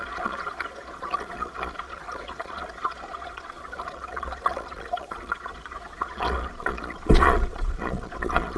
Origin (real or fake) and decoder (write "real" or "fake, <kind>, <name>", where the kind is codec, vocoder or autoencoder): fake, vocoder, Vocos